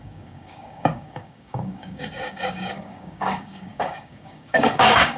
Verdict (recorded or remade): remade